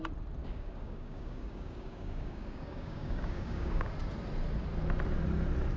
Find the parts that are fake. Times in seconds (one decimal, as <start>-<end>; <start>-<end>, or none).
0.4-3.9